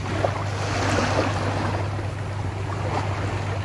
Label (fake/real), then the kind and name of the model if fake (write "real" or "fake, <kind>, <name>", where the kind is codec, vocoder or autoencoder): real